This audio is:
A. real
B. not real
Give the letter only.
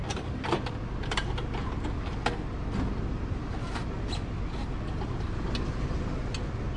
A